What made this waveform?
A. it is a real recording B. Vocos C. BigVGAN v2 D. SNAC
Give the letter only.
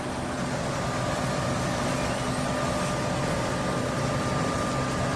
A